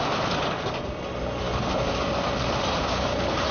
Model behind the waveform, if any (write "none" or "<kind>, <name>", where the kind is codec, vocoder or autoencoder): none